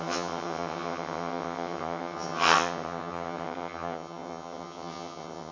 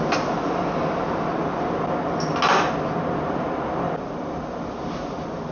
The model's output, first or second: first